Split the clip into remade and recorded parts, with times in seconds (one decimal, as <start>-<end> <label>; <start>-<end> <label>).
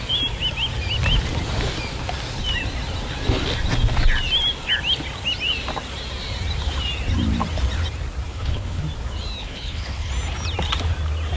0.0-8.3 recorded; 8.3-8.8 remade; 8.8-9.4 recorded; 9.4-10.1 remade; 10.1-11.4 recorded